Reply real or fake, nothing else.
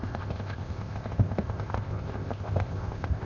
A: fake